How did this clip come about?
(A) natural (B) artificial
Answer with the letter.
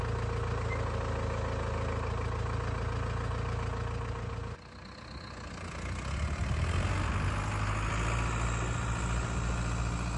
A